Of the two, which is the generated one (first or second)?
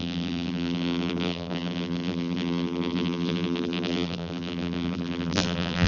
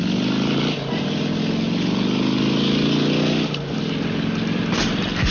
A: first